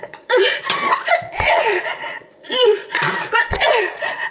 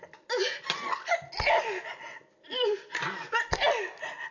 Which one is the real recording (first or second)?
second